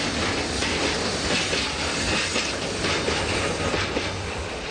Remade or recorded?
recorded